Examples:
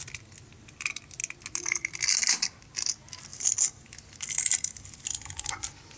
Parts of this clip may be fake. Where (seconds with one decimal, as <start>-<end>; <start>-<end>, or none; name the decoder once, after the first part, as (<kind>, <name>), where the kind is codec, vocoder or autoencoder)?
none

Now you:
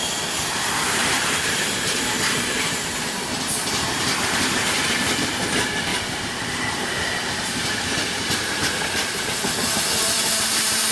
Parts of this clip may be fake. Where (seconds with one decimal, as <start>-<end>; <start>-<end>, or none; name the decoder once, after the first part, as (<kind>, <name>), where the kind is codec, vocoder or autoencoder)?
1.0-5.0 (vocoder, BigVGAN v2); 5.9-9.4

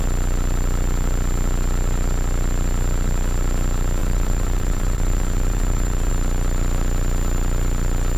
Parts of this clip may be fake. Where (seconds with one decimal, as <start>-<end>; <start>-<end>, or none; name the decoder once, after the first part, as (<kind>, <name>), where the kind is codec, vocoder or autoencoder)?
4.0-6.1 (vocoder, BigVGAN v2)